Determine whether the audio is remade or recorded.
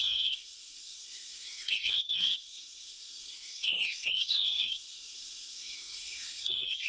remade